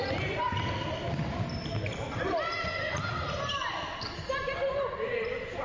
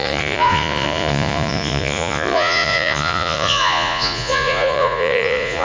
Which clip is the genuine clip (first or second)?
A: first